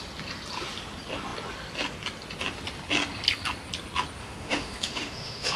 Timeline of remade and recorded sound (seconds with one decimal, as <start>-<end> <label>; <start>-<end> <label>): 0.0-4.2 recorded; 4.2-5.6 remade

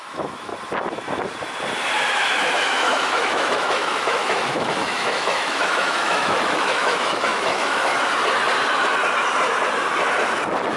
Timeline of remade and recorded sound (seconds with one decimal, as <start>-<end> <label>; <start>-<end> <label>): 0.0-0.5 remade; 0.5-2.1 recorded; 2.1-7.9 remade; 7.9-10.8 recorded

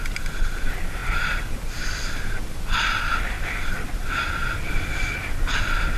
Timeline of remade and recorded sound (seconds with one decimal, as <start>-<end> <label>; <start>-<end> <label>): 0.0-6.0 recorded

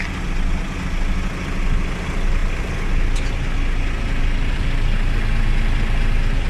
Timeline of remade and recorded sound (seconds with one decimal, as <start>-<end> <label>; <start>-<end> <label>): 0.0-6.5 recorded

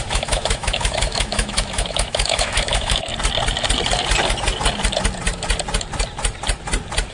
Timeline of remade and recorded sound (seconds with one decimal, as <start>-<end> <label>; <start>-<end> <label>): 0.0-3.1 remade; 3.1-7.1 recorded